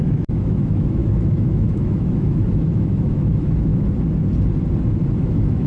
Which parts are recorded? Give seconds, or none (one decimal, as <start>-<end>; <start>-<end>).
3.7-5.2